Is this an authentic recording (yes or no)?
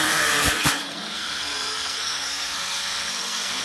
no